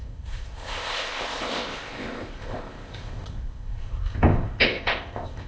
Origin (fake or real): fake